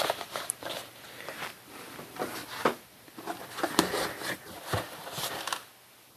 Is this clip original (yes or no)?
no